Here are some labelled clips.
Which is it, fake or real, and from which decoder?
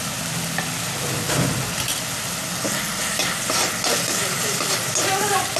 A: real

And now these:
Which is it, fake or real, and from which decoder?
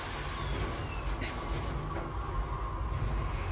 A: real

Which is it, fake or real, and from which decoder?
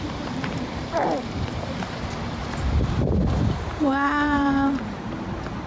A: fake, vocoder, BigVGAN v2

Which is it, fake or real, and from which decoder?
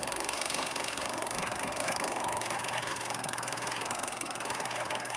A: fake, codec, SNAC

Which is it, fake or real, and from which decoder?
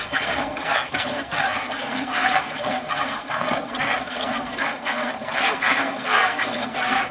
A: fake, codec, SNAC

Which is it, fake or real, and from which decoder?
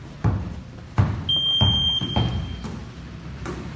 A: real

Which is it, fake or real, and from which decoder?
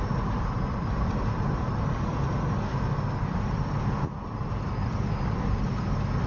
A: real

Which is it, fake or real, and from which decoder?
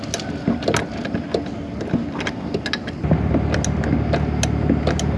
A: real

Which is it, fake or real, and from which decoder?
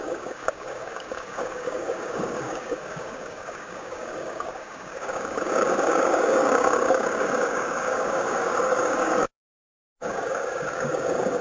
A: fake, codec, DAC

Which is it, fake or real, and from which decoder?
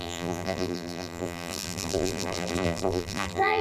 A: fake, vocoder, BigVGAN v2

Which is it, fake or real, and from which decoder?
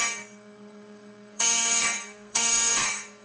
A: fake, codec, SNAC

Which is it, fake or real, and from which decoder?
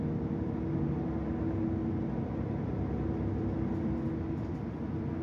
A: real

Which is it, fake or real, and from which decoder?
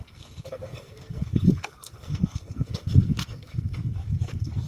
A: fake, codec, SNAC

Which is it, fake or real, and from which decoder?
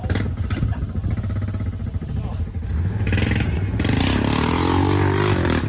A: real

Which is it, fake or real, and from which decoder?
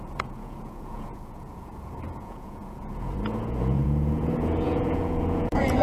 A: fake, vocoder, Vocos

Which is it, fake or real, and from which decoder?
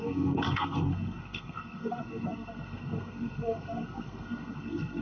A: fake, codec, SNAC